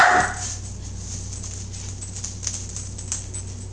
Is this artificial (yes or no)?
no